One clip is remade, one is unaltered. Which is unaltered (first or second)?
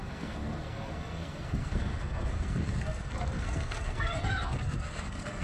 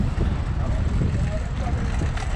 second